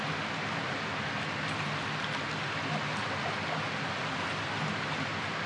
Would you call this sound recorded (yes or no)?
yes